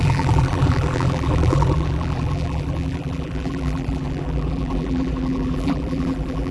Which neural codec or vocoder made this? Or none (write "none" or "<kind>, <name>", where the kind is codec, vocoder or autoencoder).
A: vocoder, BigVGAN v2